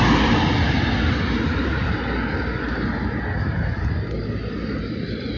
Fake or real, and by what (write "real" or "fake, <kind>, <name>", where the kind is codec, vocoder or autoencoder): real